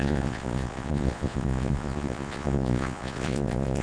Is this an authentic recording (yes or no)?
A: no